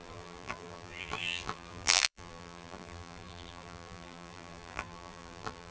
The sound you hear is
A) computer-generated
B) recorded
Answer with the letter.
A